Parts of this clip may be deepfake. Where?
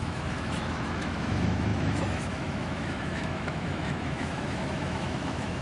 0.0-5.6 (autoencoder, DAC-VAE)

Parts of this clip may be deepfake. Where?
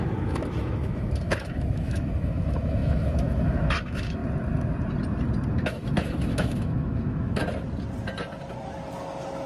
0.0-4.2 (autoencoder, DAC-VAE); 5.5-7.4